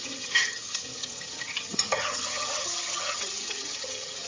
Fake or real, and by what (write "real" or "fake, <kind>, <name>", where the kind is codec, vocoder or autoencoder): fake, vocoder, HiFi-GAN